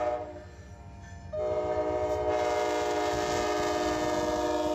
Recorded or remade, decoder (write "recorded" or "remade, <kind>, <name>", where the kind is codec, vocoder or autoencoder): recorded